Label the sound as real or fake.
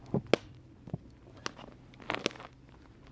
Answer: real